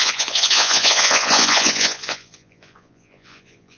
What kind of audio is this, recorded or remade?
remade